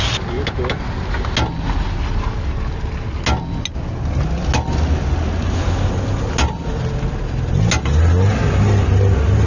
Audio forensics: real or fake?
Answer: real